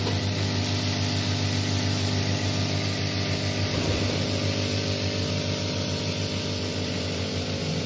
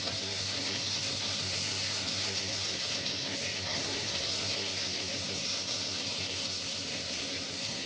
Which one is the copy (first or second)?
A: second